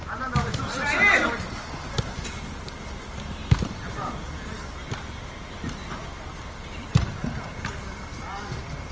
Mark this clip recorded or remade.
recorded